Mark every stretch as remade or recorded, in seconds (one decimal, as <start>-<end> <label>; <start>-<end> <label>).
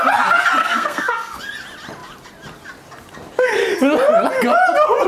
0.0-0.6 recorded; 0.6-1.4 remade; 1.4-5.1 recorded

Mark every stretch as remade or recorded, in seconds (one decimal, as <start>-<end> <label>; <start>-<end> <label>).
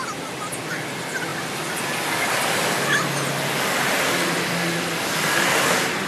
0.0-6.1 recorded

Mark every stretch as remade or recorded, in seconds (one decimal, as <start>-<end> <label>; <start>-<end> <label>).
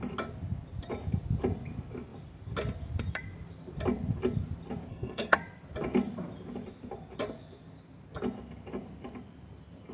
0.0-4.9 recorded; 4.9-5.4 remade; 5.4-9.9 recorded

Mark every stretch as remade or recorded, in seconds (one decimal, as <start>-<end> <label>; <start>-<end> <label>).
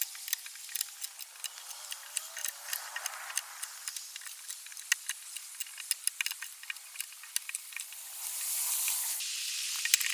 0.0-10.1 recorded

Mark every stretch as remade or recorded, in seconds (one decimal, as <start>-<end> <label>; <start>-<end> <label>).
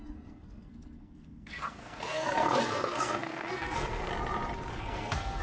0.0-4.1 remade; 4.1-4.7 recorded; 4.7-5.4 remade